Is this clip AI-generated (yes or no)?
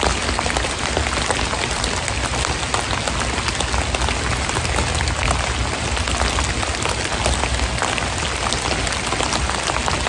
no